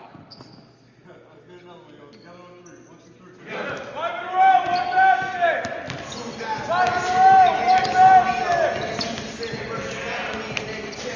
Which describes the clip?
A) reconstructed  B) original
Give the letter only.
B